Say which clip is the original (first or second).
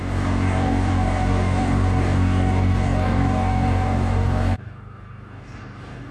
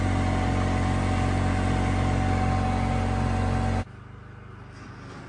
second